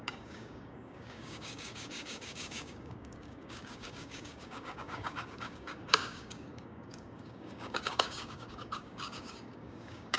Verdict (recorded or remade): remade